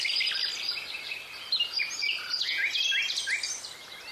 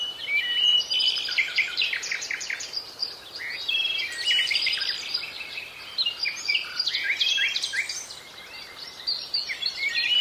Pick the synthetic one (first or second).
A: second